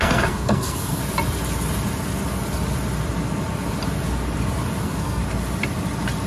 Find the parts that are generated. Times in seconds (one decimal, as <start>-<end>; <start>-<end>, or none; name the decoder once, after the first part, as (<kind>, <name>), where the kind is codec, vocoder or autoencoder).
0.0-1.0 (codec, SNAC); 4.8-5.2

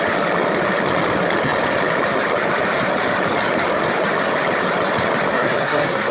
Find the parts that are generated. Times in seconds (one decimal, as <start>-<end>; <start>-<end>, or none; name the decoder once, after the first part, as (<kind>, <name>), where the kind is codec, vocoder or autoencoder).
5.3-6.1 (codec, SNAC)

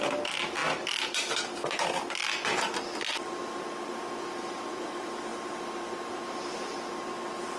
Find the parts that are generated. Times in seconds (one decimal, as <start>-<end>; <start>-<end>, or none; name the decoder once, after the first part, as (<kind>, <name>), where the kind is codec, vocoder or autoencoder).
none

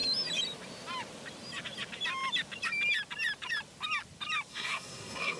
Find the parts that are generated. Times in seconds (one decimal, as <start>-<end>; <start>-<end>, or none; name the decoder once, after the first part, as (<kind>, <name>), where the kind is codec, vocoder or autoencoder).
4.5-5.4 (codec, SNAC)

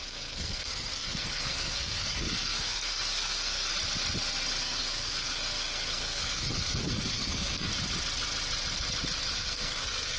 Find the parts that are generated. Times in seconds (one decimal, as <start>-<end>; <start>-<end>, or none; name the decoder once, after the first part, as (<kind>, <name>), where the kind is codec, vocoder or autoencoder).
0.0-3.7 (codec, SNAC); 4.6-7.7; 9.3-10.2

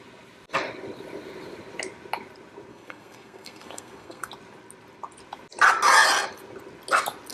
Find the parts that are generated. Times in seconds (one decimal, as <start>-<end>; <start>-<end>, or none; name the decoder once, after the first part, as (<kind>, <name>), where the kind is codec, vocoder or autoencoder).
2.7-4.3 (codec, SNAC)

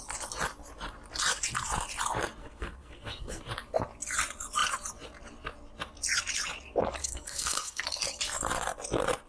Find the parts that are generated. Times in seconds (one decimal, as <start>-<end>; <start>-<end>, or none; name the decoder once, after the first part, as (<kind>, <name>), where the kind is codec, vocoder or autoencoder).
2.4-3.4 (codec, SNAC); 7.0-7.8